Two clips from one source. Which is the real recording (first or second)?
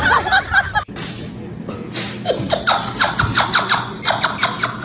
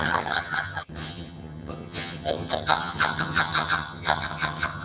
first